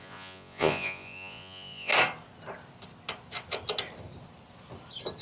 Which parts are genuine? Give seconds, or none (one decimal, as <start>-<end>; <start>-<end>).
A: 1.9-5.2